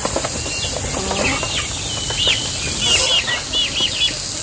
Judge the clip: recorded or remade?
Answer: recorded